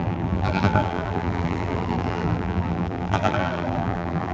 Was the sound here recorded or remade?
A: remade